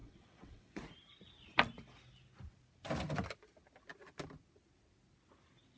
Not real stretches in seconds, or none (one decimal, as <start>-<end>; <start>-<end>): 0.0-0.8